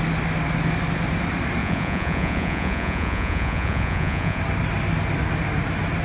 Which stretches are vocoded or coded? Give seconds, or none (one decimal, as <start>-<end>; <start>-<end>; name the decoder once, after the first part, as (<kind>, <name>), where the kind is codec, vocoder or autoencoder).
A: 1.6-4.4 (vocoder, Vocos)

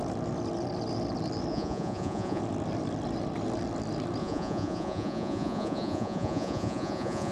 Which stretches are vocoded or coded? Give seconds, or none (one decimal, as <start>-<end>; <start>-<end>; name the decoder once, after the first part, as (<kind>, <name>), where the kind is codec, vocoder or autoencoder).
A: 1.5-2.4 (vocoder, Vocos); 4.2-7.3

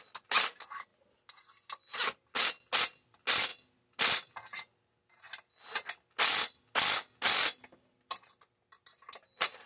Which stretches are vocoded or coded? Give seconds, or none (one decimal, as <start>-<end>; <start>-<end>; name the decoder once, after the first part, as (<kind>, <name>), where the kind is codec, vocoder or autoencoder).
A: none

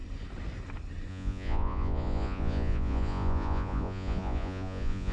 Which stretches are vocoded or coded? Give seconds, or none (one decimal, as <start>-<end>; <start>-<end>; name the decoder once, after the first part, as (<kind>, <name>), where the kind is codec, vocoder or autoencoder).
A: 1.1-5.1 (vocoder, Vocos)